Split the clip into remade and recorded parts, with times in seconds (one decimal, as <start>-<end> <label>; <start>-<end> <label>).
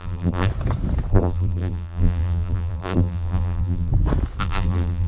0.0-0.5 remade; 0.5-1.1 recorded; 1.1-3.9 remade; 3.9-4.4 recorded; 4.4-5.1 remade